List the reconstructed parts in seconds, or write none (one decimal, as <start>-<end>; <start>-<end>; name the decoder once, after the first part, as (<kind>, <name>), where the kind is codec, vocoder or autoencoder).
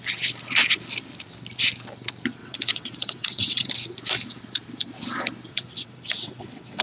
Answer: 2.4-3.7 (vocoder, WaveNeXt); 5.5-6.8